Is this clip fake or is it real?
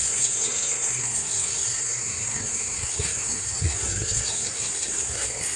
fake